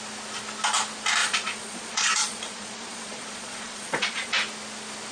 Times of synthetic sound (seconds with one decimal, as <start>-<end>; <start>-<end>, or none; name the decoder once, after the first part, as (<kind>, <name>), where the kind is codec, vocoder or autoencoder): 1.2-4.3 (vocoder, Vocos)